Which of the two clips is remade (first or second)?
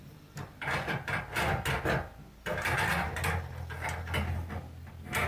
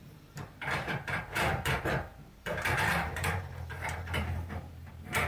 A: second